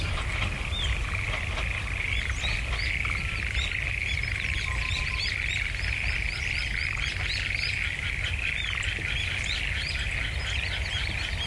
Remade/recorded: recorded